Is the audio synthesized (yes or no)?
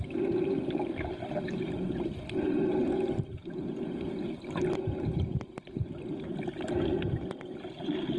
no